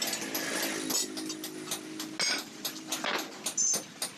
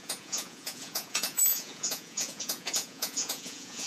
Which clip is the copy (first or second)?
second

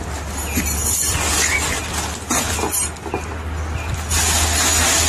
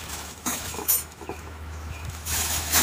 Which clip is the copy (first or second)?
second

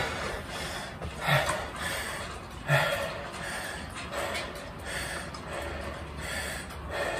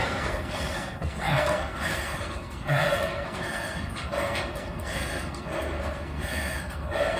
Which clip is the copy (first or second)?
second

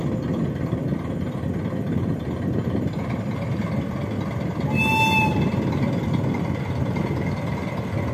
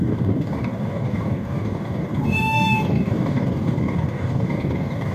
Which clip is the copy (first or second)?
second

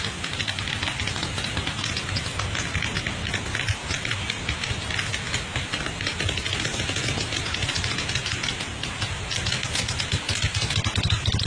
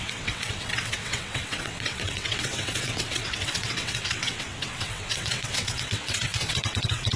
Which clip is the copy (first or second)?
second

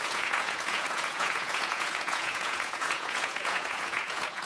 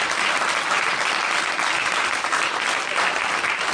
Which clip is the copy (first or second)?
first